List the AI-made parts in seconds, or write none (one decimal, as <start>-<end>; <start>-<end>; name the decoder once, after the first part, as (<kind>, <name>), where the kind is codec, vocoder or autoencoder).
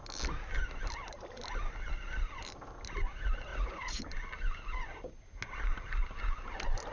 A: 3.5-4.0 (vocoder, Vocos)